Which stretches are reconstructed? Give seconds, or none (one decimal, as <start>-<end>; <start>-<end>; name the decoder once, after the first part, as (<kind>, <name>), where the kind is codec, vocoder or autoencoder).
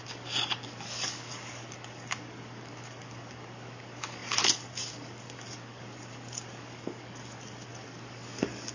0.0-8.7 (codec, DAC)